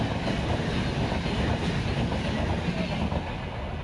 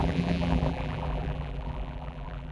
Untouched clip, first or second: first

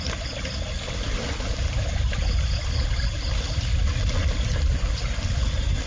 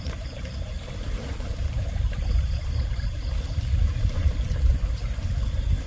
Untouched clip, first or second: first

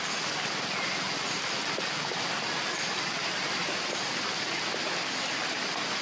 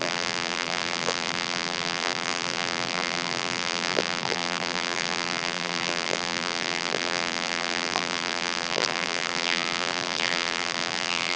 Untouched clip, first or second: first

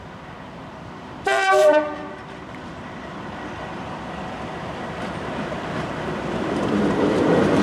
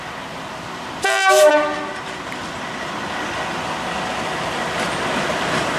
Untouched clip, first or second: second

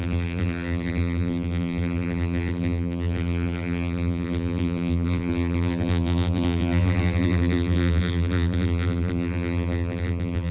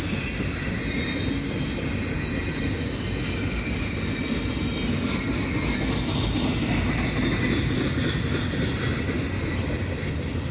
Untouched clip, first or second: second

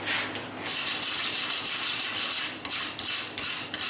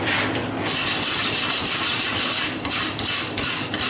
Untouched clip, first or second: first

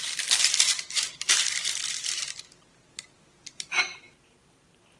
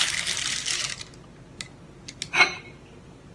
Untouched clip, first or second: second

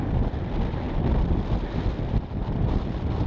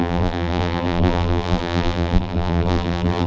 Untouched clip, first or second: first